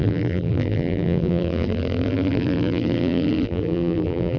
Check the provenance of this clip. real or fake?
fake